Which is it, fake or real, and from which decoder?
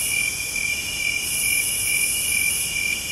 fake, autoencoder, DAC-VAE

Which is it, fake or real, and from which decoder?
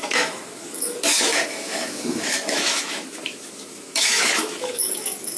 fake, autoencoder, DAC-VAE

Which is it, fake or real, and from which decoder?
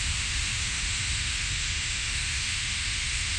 fake, autoencoder, DAC-VAE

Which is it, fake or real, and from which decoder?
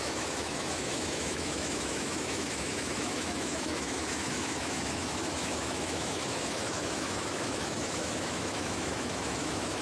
fake, autoencoder, DAC-VAE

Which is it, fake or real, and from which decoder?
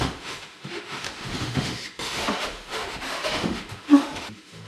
fake, autoencoder, DAC-VAE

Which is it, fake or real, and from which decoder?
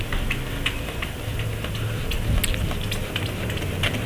real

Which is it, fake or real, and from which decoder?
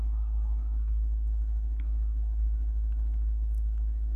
fake, autoencoder, DAC-VAE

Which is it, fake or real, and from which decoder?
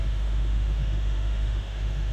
fake, autoencoder, DAC-VAE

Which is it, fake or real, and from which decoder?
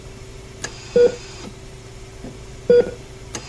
real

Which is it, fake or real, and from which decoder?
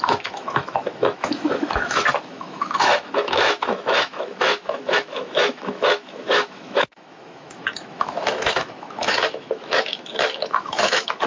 fake, autoencoder, DAC-VAE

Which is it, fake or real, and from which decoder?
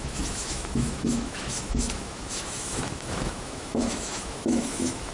fake, autoencoder, DAC-VAE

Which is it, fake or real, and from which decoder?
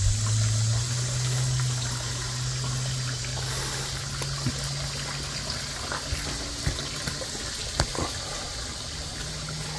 real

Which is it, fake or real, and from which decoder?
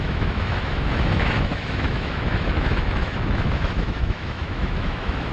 fake, autoencoder, DAC-VAE